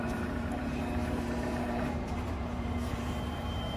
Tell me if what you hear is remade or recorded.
remade